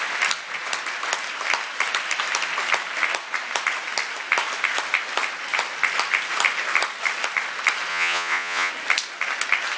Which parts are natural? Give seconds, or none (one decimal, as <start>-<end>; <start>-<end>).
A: 0.0-7.9; 8.7-9.8